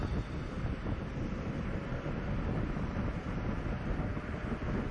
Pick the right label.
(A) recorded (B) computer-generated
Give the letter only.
A